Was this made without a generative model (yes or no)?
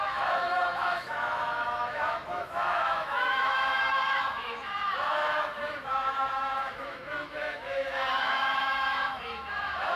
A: no